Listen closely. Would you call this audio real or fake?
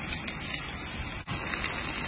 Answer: real